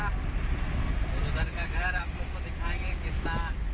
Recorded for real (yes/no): yes